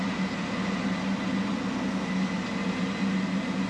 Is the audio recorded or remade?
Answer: recorded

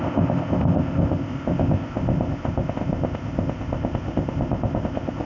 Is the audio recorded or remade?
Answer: remade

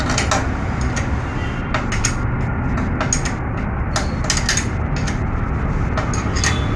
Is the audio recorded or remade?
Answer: recorded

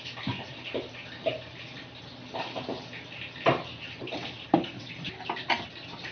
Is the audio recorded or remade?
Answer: recorded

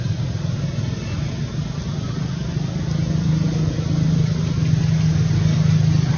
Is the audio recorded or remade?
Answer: recorded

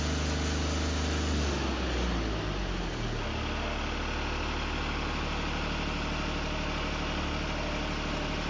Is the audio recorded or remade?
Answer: recorded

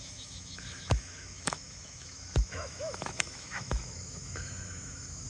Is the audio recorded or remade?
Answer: remade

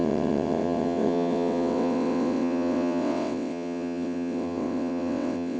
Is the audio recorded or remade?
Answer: remade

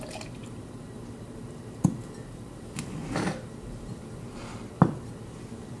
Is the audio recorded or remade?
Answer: recorded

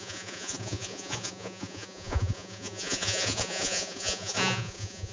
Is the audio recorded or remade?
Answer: remade